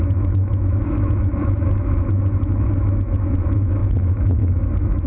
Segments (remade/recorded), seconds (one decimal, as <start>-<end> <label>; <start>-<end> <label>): 0.0-5.1 remade